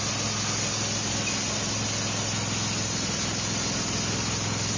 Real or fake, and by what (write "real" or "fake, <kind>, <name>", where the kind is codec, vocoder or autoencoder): real